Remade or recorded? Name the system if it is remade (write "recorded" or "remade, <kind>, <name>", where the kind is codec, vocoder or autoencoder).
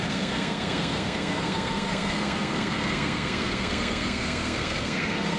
remade, codec, SNAC